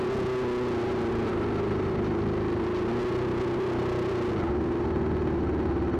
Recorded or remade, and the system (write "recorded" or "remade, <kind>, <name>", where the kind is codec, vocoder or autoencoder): recorded